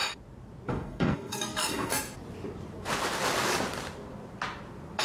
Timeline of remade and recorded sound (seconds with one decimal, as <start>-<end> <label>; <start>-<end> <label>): 0.0-0.7 recorded; 0.7-1.9 remade; 1.9-5.0 recorded

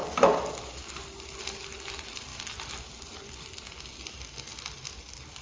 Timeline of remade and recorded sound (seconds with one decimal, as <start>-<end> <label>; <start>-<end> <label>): 0.0-5.4 recorded

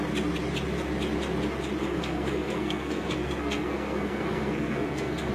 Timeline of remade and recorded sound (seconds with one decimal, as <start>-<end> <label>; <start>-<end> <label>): 0.0-1.8 recorded; 1.8-5.3 remade

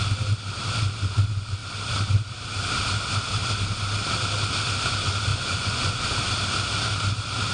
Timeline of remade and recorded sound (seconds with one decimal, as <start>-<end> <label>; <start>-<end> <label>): 0.0-5.3 recorded; 5.3-6.0 remade; 6.0-7.5 recorded

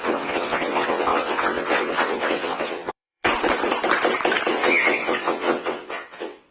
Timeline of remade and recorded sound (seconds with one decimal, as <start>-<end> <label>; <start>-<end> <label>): 0.0-3.3 remade; 3.3-4.5 recorded; 4.5-6.5 remade

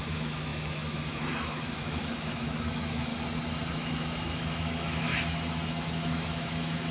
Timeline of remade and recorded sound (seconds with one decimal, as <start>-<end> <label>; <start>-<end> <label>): 0.0-3.1 remade; 3.1-3.7 recorded; 3.7-5.1 remade; 5.1-5.7 recorded; 5.7-6.9 remade

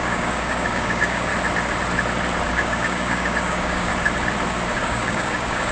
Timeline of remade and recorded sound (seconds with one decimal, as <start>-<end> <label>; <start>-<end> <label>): 0.0-1.3 remade; 1.3-2.5 recorded; 2.5-3.9 remade; 3.9-4.8 recorded; 4.8-5.7 remade